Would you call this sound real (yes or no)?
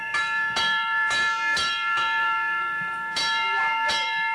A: yes